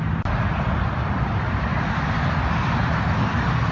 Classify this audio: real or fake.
real